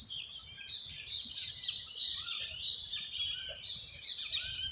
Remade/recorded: remade